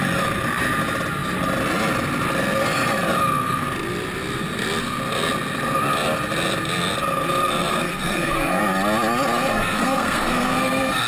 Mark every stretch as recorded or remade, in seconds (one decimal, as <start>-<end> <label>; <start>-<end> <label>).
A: 0.0-7.7 recorded; 7.7-8.6 remade; 8.6-9.5 recorded; 9.5-11.1 remade